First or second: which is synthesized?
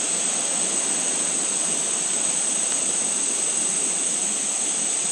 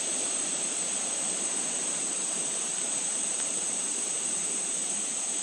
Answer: second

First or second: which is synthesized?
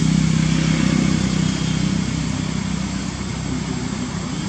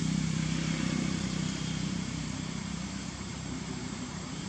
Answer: second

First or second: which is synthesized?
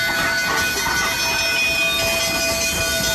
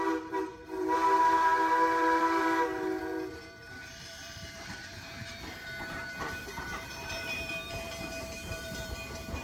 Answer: second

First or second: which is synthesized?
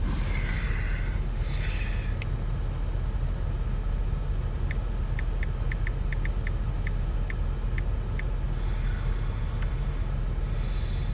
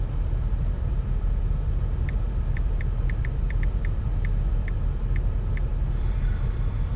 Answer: second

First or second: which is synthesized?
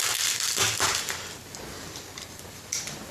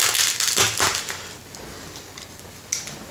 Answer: first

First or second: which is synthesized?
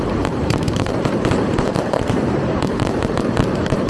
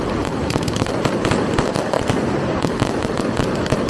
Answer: first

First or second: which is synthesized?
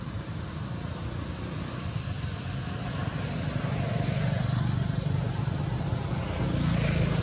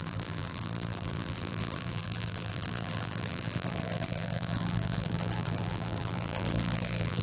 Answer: second